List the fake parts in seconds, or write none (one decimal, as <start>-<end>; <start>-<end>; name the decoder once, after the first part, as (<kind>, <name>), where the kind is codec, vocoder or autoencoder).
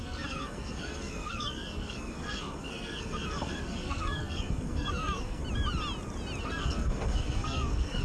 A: 0.0-5.4 (codec, SNAC); 6.4-8.0